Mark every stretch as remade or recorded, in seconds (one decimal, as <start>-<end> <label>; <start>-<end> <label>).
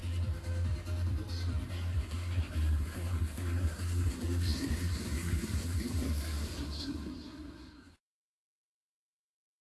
0.0-1.7 recorded; 1.7-9.6 remade